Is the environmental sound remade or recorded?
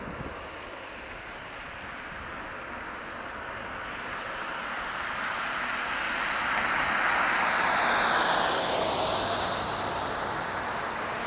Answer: recorded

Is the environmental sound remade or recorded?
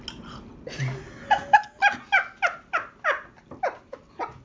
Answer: recorded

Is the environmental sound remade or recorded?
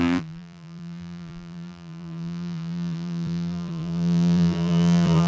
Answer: remade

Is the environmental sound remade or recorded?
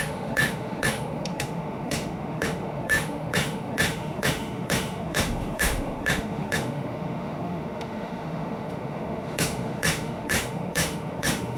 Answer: remade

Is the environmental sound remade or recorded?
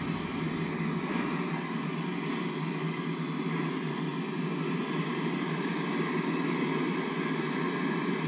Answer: recorded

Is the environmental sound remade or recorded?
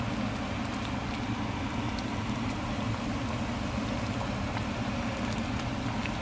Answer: recorded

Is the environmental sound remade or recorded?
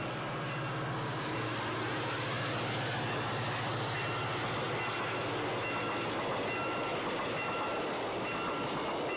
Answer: recorded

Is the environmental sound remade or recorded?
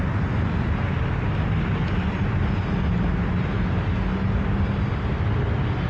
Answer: recorded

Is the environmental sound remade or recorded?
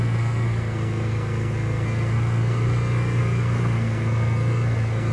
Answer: remade